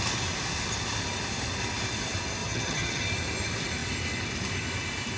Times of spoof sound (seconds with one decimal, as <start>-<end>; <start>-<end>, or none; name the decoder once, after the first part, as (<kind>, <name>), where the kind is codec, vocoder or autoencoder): 2.4-3.0 (vocoder, HiFi-GAN)